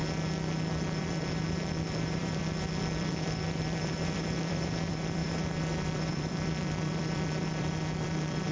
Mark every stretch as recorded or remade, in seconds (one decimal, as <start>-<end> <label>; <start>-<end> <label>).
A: 0.0-1.0 recorded; 1.0-8.5 remade